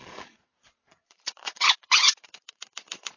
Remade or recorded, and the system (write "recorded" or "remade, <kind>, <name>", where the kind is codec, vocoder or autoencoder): remade, vocoder, Vocos